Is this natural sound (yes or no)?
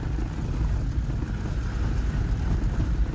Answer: yes